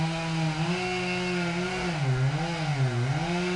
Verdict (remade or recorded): recorded